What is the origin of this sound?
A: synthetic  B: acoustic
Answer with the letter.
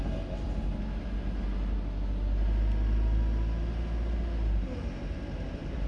B